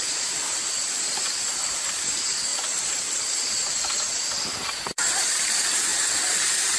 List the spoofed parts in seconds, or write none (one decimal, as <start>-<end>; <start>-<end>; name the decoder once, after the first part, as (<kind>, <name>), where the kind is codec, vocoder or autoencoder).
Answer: 0.0-5.9 (vocoder, BigVGAN v2)